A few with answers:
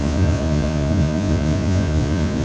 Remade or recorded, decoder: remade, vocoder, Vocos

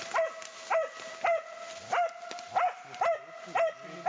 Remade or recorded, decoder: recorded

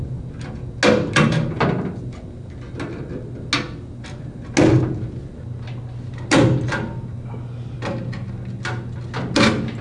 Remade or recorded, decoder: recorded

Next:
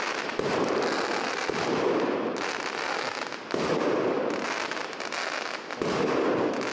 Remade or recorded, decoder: recorded